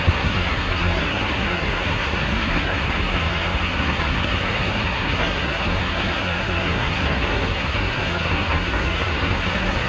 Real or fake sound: fake